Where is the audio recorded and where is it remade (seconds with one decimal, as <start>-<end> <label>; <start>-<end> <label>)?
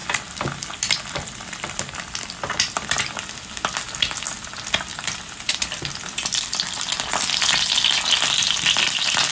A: 0.0-4.9 recorded; 4.9-7.2 remade; 7.2-9.3 recorded